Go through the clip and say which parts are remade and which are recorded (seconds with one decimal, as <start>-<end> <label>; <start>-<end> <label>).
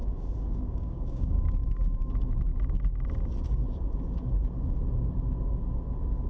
0.0-2.1 remade; 2.1-6.3 recorded